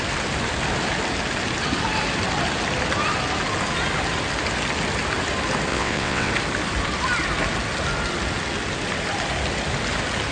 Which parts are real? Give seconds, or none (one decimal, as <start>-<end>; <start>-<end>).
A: 0.0-5.7; 6.3-10.3